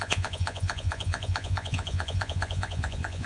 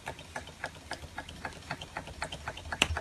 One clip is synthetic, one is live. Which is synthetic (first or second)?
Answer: first